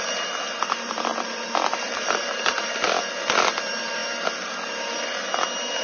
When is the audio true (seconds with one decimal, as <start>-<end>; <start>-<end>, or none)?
4.0-5.8